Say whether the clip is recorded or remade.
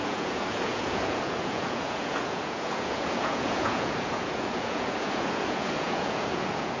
remade